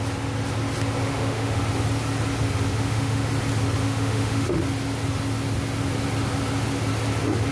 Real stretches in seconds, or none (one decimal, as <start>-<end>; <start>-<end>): 0.0-1.0; 1.6-2.7; 3.3-3.8; 4.6-7.5